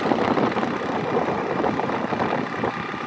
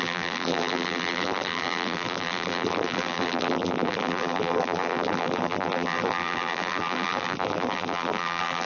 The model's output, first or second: second